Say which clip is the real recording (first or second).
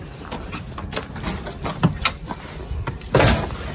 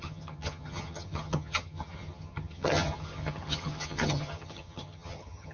first